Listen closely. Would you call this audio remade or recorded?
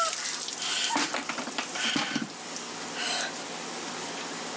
recorded